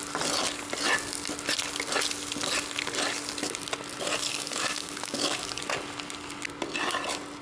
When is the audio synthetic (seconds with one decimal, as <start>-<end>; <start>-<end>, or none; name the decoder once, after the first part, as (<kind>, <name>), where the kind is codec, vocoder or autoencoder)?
4.3-5.6 (codec, DAC)